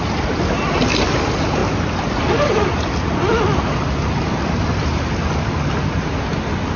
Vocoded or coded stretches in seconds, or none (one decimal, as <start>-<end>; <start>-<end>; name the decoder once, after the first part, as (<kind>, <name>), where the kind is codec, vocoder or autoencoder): none